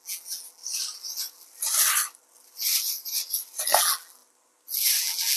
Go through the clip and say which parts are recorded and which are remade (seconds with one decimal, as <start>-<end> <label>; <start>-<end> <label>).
0.0-0.6 remade; 0.6-3.8 recorded; 3.8-4.2 remade; 4.2-5.0 recorded; 5.0-5.4 remade